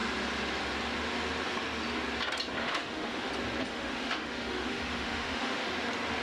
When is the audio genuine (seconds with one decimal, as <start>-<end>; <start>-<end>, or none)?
0.0-2.6; 3.3-3.7; 5.7-6.2

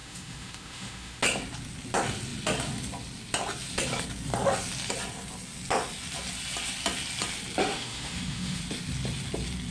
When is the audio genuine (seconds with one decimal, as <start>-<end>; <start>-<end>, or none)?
1.2-7.6; 8.6-9.7

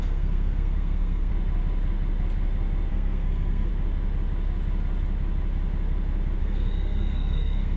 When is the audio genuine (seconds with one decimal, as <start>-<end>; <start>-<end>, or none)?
1.3-2.9; 3.7-6.4

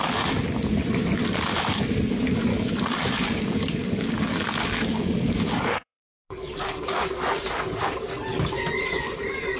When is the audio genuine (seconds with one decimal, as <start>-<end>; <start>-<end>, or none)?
0.0-2.5; 7.7-9.6

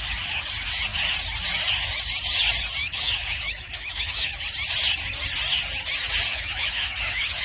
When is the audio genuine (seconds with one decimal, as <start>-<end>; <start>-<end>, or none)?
0.0-2.8; 4.4-6.3

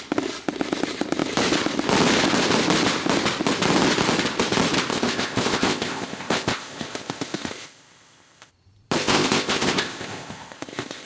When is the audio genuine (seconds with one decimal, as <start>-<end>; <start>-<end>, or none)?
0.0-4.9; 8.5-9.0

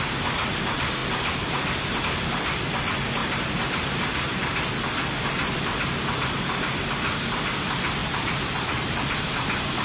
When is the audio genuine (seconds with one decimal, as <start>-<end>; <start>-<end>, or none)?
0.0-8.0; 9.3-9.8